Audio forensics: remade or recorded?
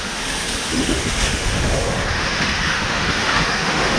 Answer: remade